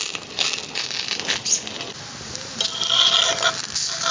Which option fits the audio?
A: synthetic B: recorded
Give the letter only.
B